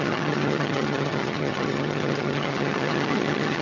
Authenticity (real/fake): fake